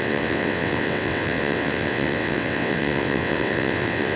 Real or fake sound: fake